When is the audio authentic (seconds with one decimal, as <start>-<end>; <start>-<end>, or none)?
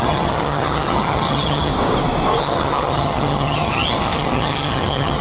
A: 1.7-2.4